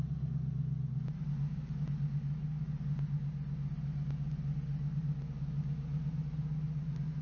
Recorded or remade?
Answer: recorded